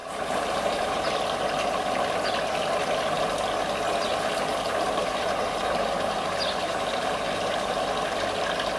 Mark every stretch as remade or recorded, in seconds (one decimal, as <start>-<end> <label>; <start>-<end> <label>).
0.0-1.1 remade; 1.1-4.5 recorded; 4.5-7.9 remade; 7.9-8.8 recorded